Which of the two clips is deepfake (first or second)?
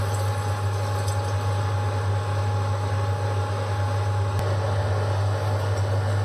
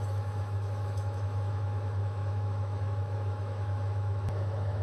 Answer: second